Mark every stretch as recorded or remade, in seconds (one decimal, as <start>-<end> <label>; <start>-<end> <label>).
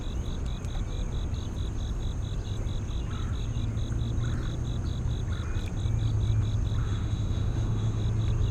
0.0-6.8 recorded; 6.8-8.0 remade; 8.0-8.5 recorded